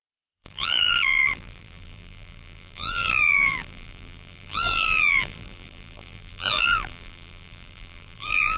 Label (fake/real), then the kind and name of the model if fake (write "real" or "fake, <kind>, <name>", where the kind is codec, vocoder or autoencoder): fake, vocoder, BigVGAN v2